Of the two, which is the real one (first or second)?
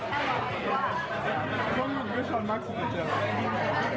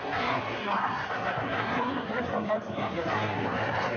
first